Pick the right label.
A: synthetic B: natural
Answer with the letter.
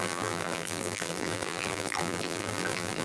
A